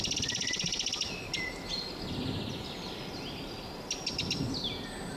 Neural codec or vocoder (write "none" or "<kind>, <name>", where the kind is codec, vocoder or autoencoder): none